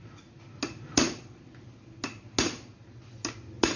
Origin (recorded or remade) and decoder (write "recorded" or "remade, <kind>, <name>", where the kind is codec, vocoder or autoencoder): recorded